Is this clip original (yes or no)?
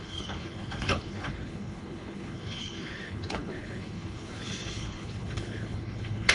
no